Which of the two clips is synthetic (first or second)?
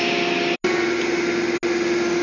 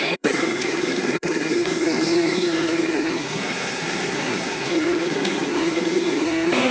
second